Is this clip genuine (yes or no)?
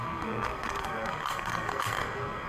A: no